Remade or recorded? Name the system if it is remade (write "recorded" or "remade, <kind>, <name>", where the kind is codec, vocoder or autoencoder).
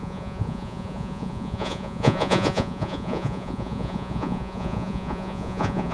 remade, vocoder, Vocos